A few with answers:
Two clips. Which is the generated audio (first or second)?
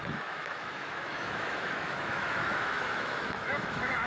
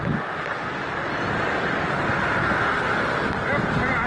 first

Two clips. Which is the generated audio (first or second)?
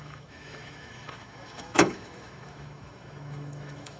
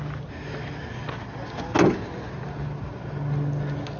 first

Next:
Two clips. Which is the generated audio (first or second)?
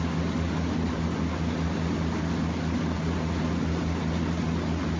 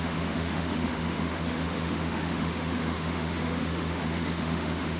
second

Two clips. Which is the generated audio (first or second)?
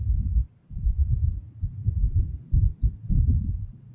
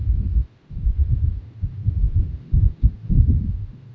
second